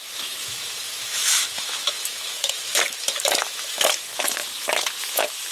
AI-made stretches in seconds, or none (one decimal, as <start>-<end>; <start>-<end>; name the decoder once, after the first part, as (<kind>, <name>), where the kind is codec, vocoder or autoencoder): 0.0-5.5 (autoencoder, DAC-VAE)